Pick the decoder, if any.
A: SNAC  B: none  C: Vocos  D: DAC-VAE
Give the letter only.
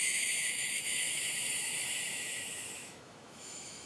D